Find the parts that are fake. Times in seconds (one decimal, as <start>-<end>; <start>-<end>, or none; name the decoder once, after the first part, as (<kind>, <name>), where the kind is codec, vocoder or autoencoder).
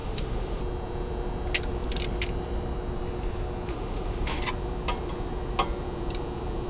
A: 0.0-0.6 (autoencoder, DAC-VAE); 3.7-4.4